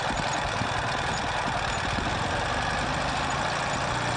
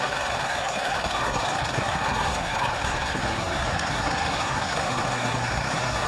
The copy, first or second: second